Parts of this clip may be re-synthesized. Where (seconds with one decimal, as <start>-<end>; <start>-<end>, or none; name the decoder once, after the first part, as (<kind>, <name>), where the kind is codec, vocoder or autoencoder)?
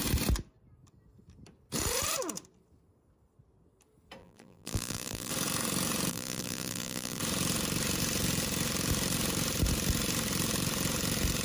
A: 4.2-5.3 (vocoder, BigVGAN v2); 6.1-7.2